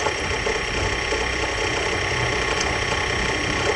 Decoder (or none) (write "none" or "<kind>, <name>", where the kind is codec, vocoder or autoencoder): vocoder, Vocos